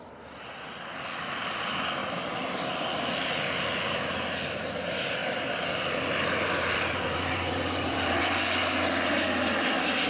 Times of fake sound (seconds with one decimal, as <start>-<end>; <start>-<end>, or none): 5.2-8.2